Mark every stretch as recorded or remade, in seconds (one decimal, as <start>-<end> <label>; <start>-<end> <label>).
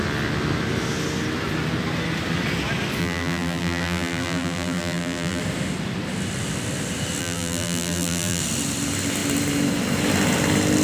0.0-3.0 recorded; 3.0-5.4 remade; 5.4-7.2 recorded; 7.2-8.4 remade; 8.4-10.8 recorded